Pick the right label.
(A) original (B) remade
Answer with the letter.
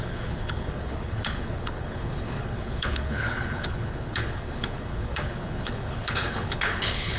B